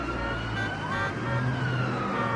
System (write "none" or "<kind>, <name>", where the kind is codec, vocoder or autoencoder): none